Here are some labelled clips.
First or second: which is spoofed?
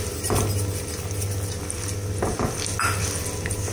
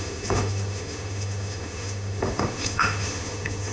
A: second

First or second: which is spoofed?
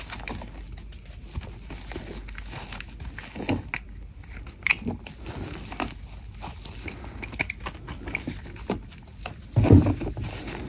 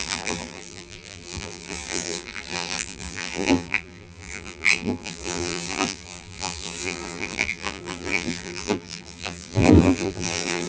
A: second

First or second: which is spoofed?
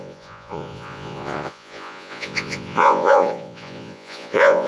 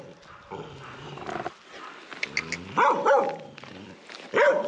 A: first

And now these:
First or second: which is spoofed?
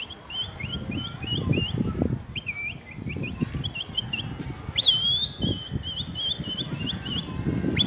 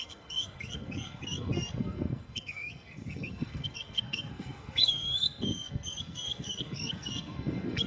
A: second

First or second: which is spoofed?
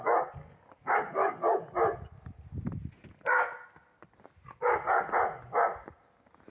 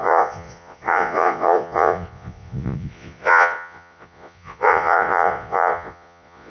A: second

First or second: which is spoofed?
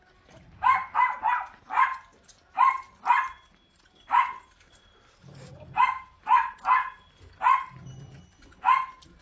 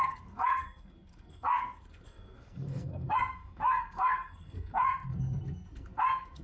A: second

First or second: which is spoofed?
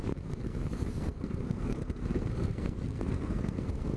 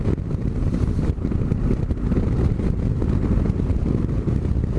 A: first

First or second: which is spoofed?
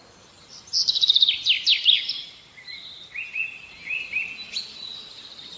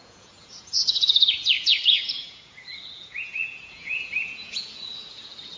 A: second